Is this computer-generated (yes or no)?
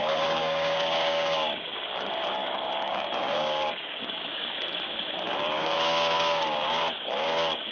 yes